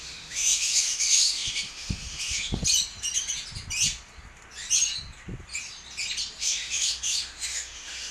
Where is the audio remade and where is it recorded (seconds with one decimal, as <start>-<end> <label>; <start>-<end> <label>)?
0.0-2.6 remade; 2.6-6.4 recorded; 6.4-8.1 remade